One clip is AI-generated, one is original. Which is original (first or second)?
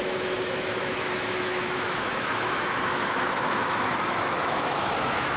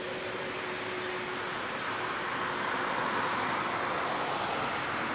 second